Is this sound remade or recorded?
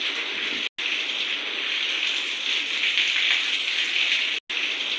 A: recorded